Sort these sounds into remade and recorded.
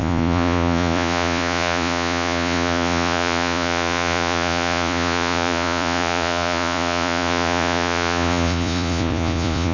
remade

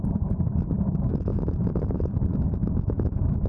remade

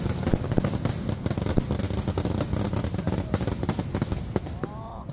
recorded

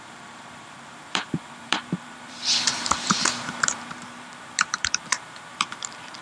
remade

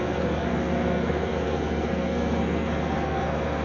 remade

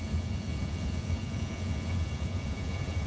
remade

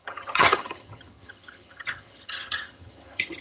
remade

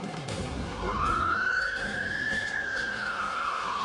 remade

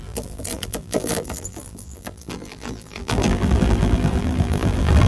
remade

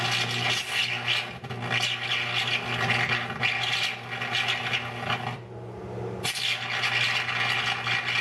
recorded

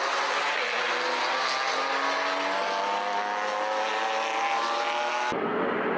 recorded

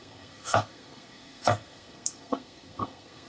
remade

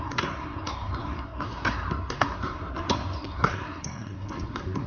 remade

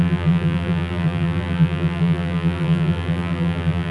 remade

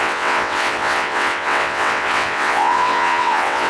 remade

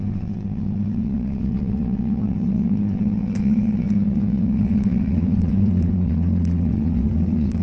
remade